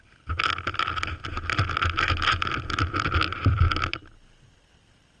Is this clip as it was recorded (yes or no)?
yes